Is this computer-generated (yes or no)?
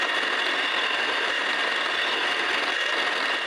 no